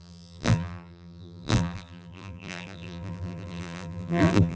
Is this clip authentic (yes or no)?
no